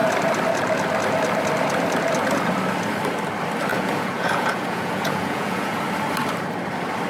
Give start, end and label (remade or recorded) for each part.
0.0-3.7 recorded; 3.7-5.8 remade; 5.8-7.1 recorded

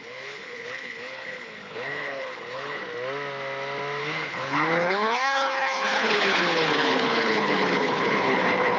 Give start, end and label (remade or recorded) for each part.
0.0-2.8 remade; 2.8-4.0 recorded; 4.0-8.8 remade

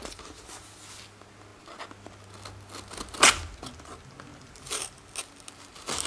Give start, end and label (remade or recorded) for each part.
0.0-4.3 recorded; 4.3-5.1 remade; 5.1-6.1 recorded

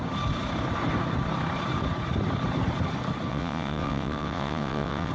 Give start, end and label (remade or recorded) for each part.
0.0-3.3 recorded; 3.3-5.1 remade

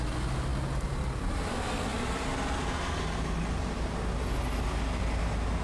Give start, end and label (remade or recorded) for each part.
0.0-5.6 recorded